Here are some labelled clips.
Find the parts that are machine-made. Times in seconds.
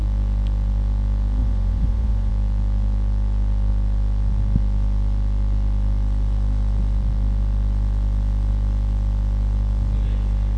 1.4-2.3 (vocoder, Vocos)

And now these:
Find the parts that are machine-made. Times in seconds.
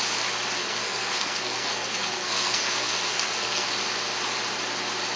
0.6-3.7 (codec, SNAC)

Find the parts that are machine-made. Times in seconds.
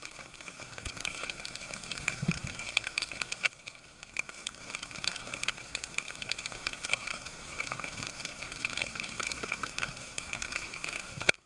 0.0-11.5 (codec, SNAC)